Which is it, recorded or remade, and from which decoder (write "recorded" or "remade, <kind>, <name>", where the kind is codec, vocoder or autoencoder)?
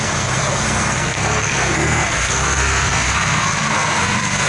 remade, codec, SNAC